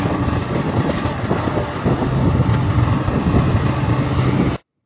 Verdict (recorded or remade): recorded